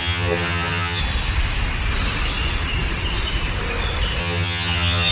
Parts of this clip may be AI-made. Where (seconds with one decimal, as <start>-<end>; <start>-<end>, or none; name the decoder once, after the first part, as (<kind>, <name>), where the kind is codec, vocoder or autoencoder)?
0.0-1.0 (vocoder, HiFi-GAN); 4.2-5.1